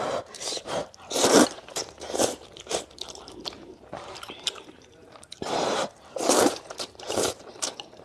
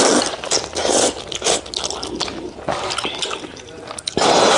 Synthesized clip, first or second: first